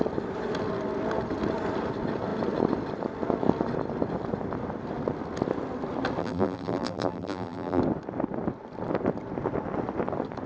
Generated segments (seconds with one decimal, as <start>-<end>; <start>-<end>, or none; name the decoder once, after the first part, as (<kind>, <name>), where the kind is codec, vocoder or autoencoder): 6.2-7.8 (vocoder, BigVGAN v2)